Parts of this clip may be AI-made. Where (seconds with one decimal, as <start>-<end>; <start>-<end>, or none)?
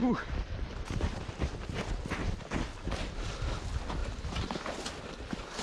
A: none